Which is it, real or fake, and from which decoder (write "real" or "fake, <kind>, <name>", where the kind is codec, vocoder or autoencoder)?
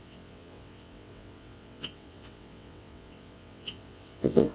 fake, vocoder, WaveNeXt